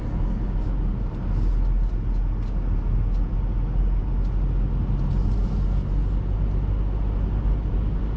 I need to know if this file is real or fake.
real